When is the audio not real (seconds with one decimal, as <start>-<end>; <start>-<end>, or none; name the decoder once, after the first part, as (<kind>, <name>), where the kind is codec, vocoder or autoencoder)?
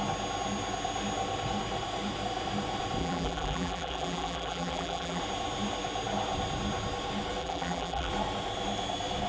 3.0-5.2 (vocoder, BigVGAN v2); 7.4-8.1